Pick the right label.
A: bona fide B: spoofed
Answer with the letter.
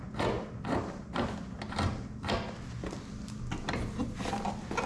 A